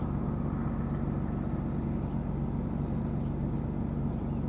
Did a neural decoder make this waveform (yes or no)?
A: no